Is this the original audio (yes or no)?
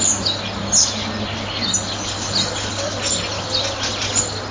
yes